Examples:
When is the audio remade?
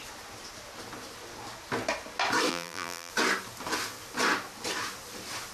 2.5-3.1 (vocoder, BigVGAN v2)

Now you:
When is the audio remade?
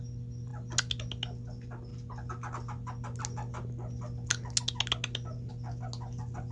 none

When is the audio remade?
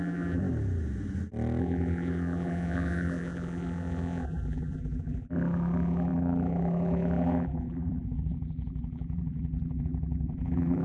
0.0-0.4 (vocoder, BigVGAN v2); 1.6-10.8